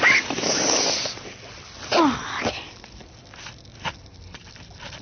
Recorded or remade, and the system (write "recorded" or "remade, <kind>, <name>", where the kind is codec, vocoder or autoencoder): remade, vocoder, BigVGAN v2